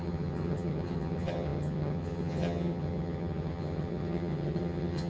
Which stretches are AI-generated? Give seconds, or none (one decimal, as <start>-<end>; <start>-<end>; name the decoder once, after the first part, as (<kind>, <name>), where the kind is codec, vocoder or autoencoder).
0.0-5.1 (vocoder, HiFi-GAN)

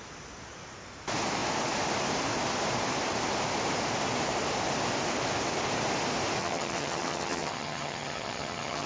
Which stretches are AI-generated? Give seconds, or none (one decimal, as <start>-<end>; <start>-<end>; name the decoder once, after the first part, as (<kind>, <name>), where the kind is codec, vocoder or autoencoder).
6.4-8.9 (vocoder, HiFi-GAN)

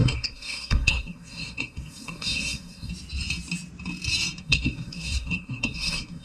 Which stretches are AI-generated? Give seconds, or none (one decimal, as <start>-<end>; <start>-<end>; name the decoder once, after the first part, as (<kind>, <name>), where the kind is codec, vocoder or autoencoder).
0.0-2.9 (codec, SNAC); 4.4-6.2

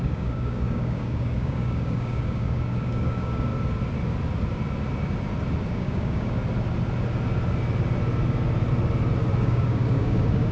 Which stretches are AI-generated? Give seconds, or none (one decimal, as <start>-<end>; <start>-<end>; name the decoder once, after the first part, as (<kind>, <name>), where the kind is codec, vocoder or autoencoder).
0.0-3.5 (codec, DAC); 5.7-6.4; 9.4-10.5

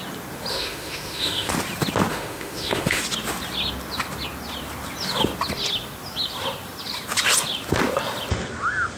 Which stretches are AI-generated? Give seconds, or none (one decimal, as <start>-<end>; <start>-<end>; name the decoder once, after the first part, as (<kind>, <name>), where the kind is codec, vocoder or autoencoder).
0.5-1.5 (autoencoder, DAC-VAE); 2.1-3.0

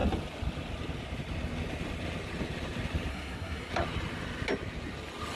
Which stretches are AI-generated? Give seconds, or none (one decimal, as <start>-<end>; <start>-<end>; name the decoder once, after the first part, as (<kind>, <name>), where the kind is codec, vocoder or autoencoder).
3.1-3.7 (codec, SNAC)

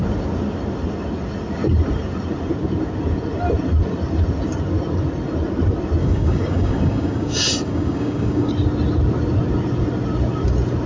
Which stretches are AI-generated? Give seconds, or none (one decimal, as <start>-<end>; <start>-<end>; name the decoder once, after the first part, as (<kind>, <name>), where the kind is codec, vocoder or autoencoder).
6.0-8.5 (codec, DAC)

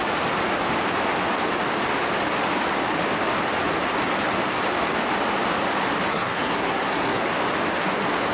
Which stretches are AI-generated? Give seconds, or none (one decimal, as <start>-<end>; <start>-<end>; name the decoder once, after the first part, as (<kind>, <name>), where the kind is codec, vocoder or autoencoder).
6.1-7.2 (codec, SNAC)